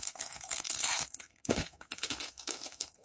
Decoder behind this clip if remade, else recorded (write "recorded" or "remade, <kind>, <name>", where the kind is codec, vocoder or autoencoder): remade, codec, SNAC